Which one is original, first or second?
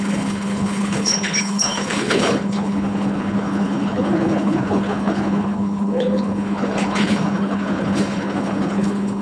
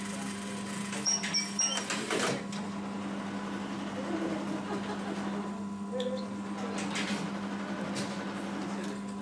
second